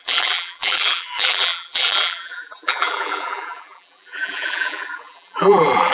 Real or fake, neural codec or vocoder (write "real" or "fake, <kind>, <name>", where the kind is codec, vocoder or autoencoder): fake, vocoder, BigVGAN v2